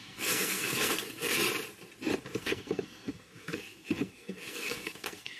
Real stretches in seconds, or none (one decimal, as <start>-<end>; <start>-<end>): 1.4-2.4

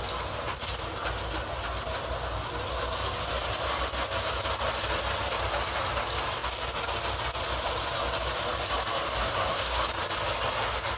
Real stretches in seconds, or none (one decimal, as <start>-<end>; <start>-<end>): 0.0-9.2; 9.8-11.0

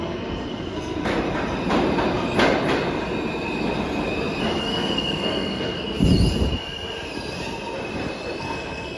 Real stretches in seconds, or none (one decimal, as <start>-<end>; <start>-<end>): 1.1-4.6; 6.0-8.4

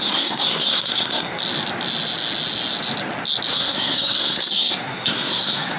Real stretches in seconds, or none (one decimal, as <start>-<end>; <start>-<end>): 1.4-3.5